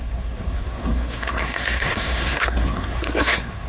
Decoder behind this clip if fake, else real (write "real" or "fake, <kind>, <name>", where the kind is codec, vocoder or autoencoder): fake, codec, SNAC